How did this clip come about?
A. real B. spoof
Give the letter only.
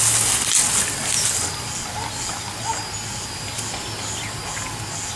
A